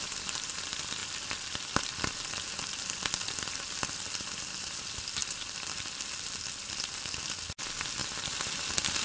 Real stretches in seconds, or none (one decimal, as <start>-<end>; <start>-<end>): 0.0-9.0